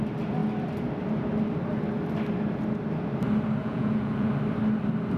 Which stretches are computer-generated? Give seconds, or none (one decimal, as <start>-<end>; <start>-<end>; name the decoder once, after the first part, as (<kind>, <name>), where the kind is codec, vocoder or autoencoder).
3.6-4.3 (vocoder, Vocos)